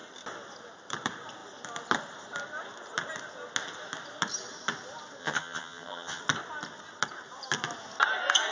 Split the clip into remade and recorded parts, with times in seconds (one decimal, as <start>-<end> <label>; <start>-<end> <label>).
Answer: 0.0-5.2 recorded; 5.2-6.2 remade; 6.2-8.5 recorded